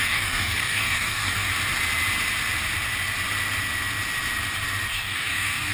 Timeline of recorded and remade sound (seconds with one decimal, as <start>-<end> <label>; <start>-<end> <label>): 0.0-1.5 remade; 1.5-4.9 recorded; 4.9-5.7 remade